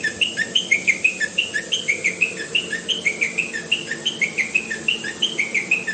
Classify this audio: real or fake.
real